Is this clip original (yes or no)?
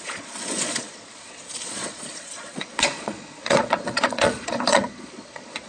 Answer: no